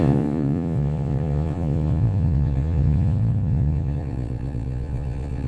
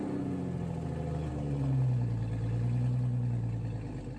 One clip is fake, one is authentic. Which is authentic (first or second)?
second